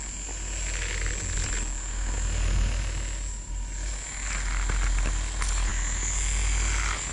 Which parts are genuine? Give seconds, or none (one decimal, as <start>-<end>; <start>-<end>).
0.0-7.1